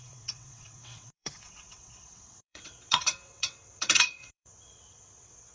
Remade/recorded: remade